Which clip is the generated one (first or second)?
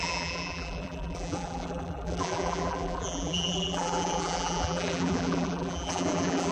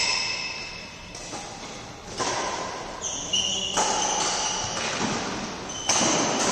first